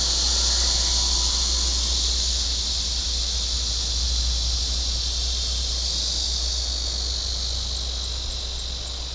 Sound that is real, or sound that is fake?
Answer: real